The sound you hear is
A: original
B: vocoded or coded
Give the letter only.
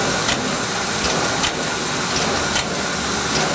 A